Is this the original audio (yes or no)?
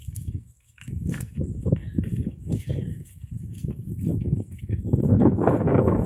no